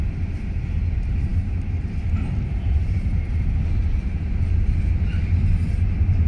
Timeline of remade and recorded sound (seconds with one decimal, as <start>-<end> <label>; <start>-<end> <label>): 0.0-6.3 recorded